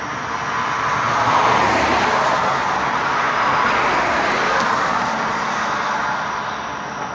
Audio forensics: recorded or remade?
recorded